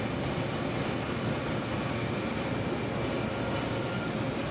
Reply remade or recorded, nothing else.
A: recorded